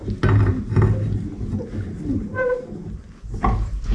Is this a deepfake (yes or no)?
no